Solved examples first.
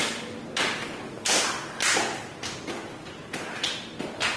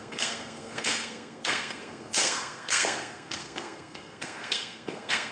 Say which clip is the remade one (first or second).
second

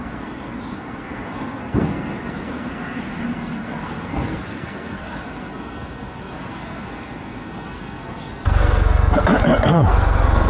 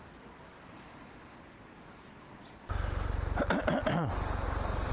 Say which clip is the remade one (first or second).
first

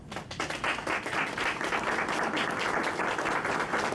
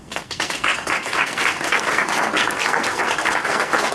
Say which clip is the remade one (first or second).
second